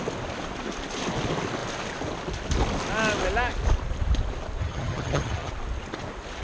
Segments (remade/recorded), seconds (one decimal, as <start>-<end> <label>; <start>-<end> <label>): 0.0-4.6 recorded; 4.6-5.5 remade; 5.5-6.4 recorded